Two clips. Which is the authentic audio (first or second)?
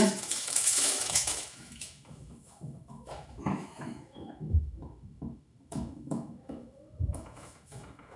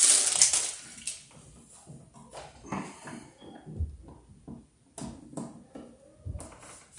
second